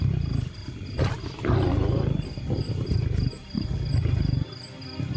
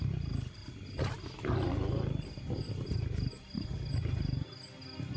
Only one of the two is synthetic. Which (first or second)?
first